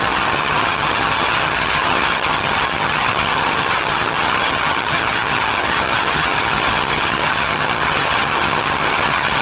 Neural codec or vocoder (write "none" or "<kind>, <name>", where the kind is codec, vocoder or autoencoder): vocoder, HiFi-GAN